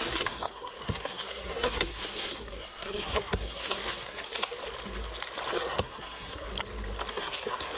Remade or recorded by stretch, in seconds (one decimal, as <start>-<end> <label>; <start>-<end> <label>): 0.0-4.6 remade; 4.6-5.5 recorded; 5.5-6.5 remade; 6.5-7.1 recorded; 7.1-7.8 remade